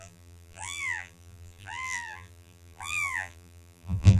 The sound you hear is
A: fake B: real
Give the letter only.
A